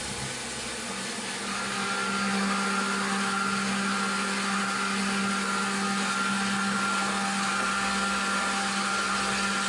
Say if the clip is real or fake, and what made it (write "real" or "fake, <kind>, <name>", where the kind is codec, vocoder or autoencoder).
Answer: real